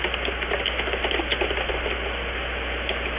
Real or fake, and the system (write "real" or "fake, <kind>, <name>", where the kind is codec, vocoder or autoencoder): real